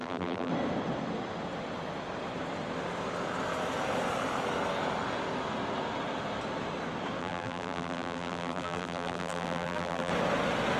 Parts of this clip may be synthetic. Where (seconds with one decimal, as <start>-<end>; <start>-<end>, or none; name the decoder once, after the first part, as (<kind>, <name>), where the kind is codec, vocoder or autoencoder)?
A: 0.0-0.5 (vocoder, BigVGAN v2); 7.2-10.1